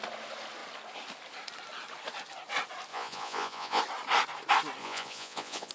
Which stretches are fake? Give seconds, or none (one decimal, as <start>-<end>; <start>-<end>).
2.9-3.8; 4.8-5.7